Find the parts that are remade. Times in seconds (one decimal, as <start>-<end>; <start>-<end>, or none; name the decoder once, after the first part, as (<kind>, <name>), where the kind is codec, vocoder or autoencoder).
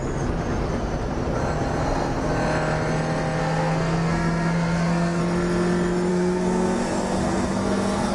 1.8-2.3 (codec, SNAC); 3.4-5.2; 6.1-8.1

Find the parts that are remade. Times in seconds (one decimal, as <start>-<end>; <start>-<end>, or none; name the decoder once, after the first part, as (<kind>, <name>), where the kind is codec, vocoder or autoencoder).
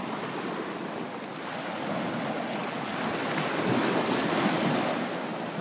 none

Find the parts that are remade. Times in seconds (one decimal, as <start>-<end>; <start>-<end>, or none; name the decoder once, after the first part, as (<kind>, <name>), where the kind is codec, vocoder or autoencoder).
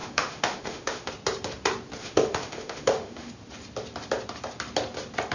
0.0-1.1 (autoencoder, DAC-VAE); 2.0-3.3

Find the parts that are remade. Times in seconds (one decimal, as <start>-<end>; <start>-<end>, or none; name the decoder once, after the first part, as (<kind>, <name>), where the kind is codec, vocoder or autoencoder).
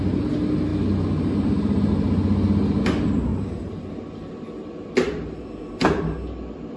3.3-3.9 (vocoder, BigVGAN v2)